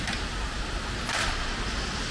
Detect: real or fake real